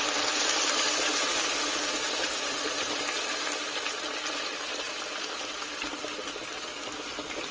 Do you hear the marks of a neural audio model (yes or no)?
no